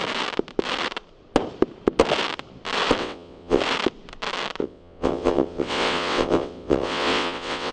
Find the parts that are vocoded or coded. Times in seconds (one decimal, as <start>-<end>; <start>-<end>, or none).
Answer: 3.0-3.6; 4.6-7.7